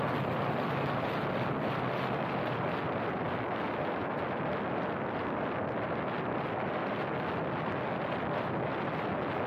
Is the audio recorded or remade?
recorded